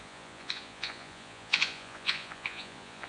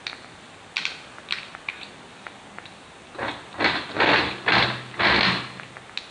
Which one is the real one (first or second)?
second